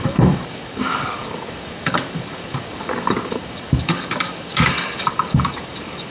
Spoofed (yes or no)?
yes